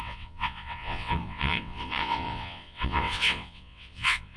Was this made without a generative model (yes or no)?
no